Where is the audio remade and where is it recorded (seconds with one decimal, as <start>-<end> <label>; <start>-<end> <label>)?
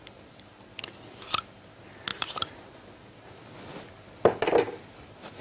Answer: 0.0-2.1 recorded; 2.1-2.8 remade; 2.8-5.4 recorded